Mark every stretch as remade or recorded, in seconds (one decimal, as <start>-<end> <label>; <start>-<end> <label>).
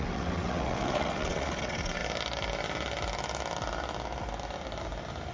0.0-2.0 remade; 2.0-5.3 recorded